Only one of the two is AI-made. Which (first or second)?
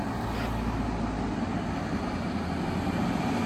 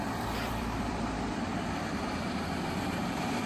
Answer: second